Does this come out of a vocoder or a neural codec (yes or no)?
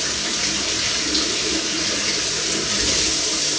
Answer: no